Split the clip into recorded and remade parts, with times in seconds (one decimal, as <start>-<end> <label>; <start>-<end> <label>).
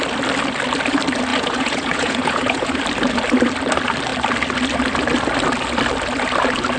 0.0-1.3 recorded; 1.3-2.8 remade; 2.8-6.8 recorded